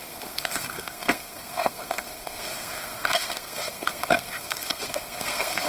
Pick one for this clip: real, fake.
fake